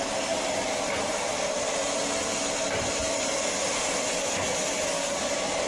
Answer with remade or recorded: recorded